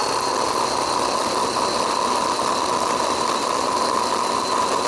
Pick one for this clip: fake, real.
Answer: real